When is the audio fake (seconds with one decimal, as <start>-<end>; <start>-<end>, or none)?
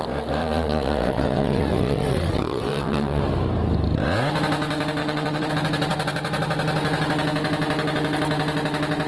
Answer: 0.4-3.2; 5.0-5.5